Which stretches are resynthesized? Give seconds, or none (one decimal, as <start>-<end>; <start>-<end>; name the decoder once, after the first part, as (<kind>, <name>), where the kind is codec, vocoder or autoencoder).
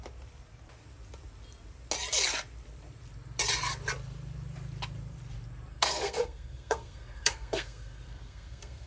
5.7-8.9 (codec, SNAC)